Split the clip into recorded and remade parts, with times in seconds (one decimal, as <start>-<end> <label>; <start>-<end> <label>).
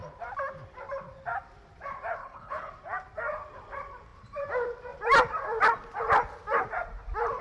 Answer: 0.0-2.2 recorded; 2.2-2.7 remade; 2.7-7.4 recorded